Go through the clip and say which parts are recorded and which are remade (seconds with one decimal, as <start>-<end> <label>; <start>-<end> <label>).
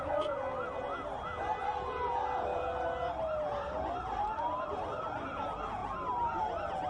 0.0-6.9 recorded